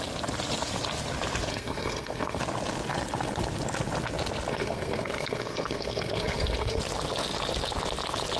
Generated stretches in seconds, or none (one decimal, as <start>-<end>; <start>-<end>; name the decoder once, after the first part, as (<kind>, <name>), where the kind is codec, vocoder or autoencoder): 1.5-2.4 (codec, SNAC); 4.5-6.8